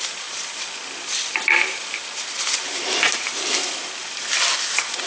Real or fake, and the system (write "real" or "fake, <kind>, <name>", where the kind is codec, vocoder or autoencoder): real